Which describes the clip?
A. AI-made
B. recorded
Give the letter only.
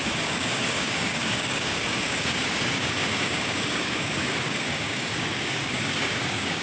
A